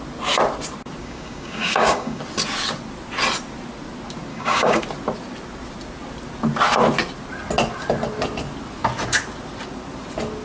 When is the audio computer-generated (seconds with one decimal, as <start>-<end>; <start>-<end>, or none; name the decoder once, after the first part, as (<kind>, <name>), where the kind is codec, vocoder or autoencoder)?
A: 1.0-2.2 (codec, DAC); 4.3-4.8